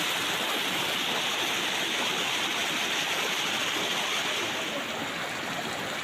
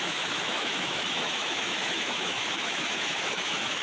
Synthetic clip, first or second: second